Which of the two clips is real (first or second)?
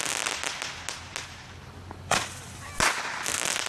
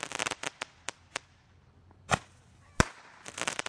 first